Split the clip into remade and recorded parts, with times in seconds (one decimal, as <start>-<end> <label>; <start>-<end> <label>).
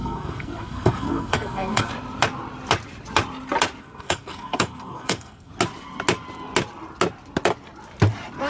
0.0-1.9 remade; 1.9-3.8 recorded; 3.8-5.5 remade; 5.5-8.5 recorded